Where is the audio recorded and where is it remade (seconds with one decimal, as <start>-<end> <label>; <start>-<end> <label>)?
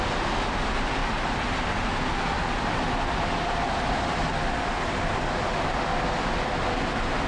0.0-1.0 recorded; 1.0-5.0 remade; 5.0-7.3 recorded